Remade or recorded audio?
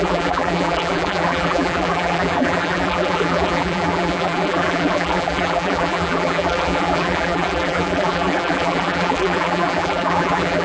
remade